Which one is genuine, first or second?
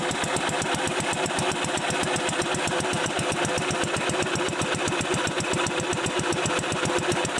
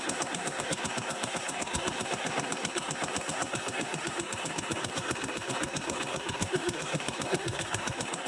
first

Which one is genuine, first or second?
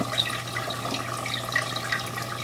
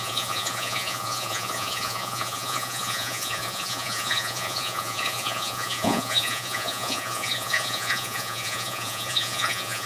first